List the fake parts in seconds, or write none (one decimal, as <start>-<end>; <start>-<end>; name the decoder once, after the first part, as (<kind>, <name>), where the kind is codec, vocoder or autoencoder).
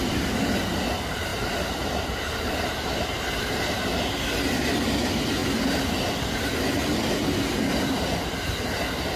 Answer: 1.3-4.0 (vocoder, BigVGAN v2)